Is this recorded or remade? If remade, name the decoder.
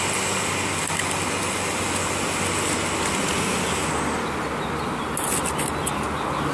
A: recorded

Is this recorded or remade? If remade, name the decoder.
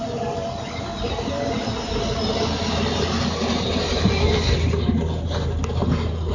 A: recorded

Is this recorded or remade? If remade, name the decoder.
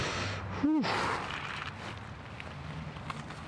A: recorded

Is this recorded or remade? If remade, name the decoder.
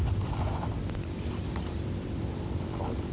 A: recorded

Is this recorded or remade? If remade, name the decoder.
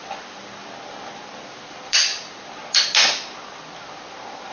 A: remade, vocoder, BigVGAN v2